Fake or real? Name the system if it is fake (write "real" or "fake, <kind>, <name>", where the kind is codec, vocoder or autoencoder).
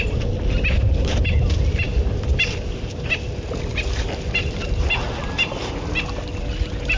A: real